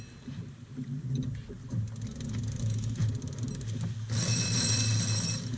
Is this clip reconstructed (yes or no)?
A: no